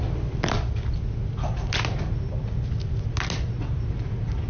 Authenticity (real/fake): real